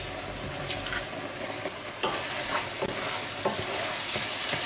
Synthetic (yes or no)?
no